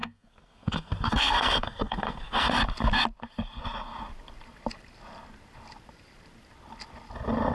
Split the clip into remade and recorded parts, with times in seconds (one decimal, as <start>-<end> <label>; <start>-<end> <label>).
0.0-2.5 remade; 2.5-7.5 recorded